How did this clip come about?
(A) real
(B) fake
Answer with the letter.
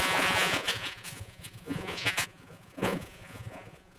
B